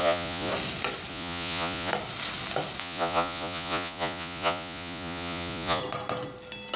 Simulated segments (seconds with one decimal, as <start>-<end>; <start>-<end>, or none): 0.0-0.5; 1.1-1.9; 2.8-5.8